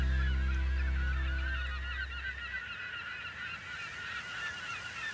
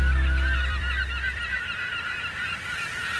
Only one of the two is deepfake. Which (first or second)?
second